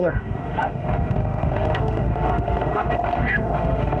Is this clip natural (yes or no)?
no